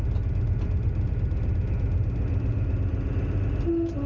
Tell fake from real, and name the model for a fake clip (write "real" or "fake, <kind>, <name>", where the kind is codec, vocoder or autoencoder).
real